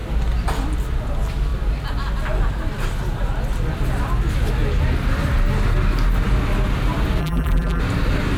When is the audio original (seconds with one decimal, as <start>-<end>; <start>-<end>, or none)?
0.0-7.2; 7.8-8.4